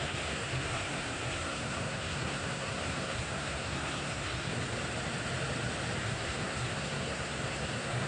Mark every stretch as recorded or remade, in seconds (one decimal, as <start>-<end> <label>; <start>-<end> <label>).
0.0-4.6 remade; 4.6-6.0 recorded; 6.0-8.1 remade